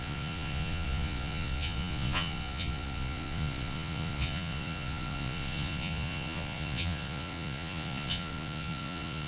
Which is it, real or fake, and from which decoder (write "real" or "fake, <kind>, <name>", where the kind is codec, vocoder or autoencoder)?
fake, vocoder, Vocos